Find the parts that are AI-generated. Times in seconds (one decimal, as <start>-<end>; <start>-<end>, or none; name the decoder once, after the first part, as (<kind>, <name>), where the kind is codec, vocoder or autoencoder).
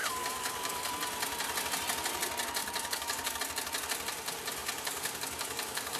0.0-0.9 (codec, DAC); 2.6-3.4; 4.6-6.0